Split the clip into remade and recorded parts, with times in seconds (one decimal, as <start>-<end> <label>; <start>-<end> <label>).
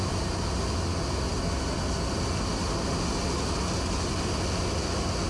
0.0-5.3 recorded